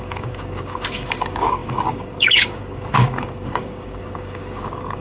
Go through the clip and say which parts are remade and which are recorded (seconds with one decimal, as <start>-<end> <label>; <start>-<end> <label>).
0.0-5.0 remade